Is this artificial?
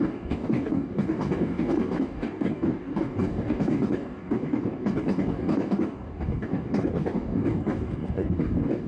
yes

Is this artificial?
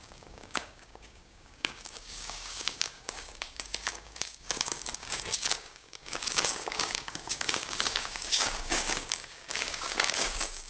yes